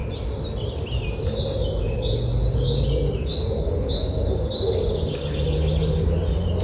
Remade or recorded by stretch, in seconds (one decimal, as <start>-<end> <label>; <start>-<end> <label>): 0.0-6.6 recorded

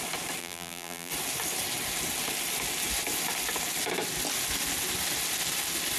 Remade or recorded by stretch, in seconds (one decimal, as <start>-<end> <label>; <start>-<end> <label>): 0.0-0.4 recorded; 0.4-1.1 remade; 1.1-6.0 recorded

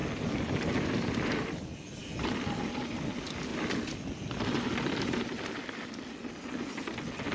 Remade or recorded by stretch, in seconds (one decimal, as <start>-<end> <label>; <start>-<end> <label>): 0.0-1.1 recorded; 1.1-3.5 remade; 3.5-4.1 recorded; 4.1-7.3 remade

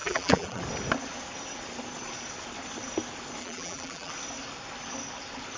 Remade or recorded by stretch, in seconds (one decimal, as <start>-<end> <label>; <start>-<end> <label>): 0.0-0.6 remade; 0.6-3.4 recorded; 3.4-4.1 remade; 4.1-5.6 recorded

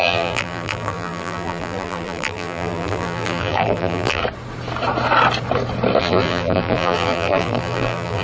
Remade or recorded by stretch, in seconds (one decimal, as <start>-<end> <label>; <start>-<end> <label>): 0.0-4.2 remade; 4.2-6.0 recorded; 6.0-8.2 remade

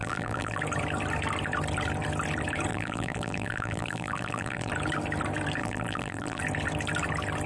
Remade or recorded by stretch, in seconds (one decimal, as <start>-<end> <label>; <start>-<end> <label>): 0.0-0.6 remade; 0.6-2.7 recorded; 2.7-4.7 remade; 4.7-5.6 recorded; 5.6-6.4 remade; 6.4-7.5 recorded

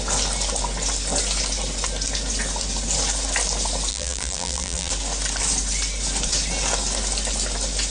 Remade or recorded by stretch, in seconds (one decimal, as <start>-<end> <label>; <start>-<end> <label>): 0.0-3.9 recorded; 3.9-4.9 remade; 4.9-7.9 recorded